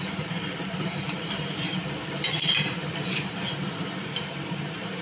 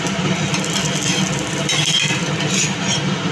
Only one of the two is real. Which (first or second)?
second